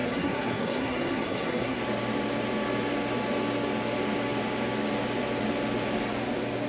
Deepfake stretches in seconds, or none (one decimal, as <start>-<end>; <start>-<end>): 0.0-1.8